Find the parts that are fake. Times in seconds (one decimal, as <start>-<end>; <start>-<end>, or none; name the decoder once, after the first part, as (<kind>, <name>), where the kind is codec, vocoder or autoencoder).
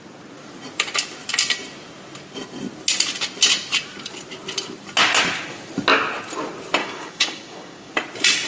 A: 6.8-7.9 (codec, DAC)